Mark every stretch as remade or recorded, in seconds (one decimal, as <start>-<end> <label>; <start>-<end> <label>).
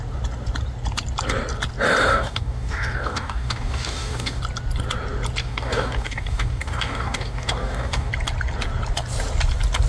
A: 0.0-2.1 recorded; 2.1-4.4 remade; 4.4-5.4 recorded; 5.4-8.1 remade; 8.1-9.9 recorded